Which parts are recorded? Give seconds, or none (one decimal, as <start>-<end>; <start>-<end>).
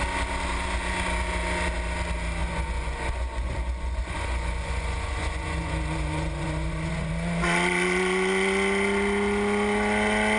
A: 0.0-2.4; 7.1-10.4